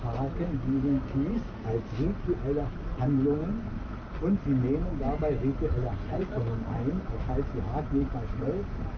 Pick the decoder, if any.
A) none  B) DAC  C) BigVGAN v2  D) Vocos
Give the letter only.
A